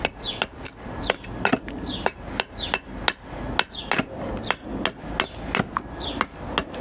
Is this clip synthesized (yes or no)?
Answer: no